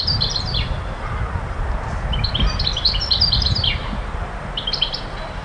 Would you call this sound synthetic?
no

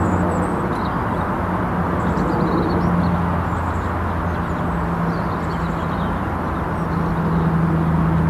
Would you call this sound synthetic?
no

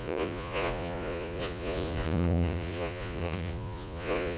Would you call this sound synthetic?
yes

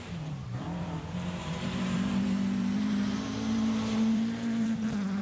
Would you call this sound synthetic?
yes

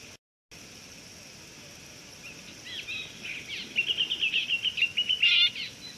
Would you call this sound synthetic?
no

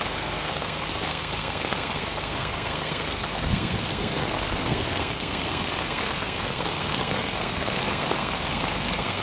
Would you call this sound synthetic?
yes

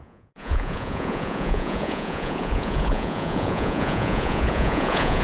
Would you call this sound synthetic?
yes